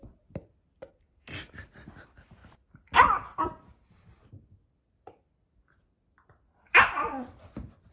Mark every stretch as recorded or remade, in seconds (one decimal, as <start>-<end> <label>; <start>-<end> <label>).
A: 0.0-7.9 recorded